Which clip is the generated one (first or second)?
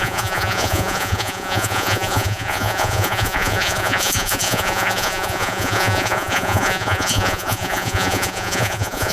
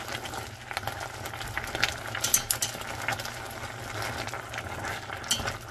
first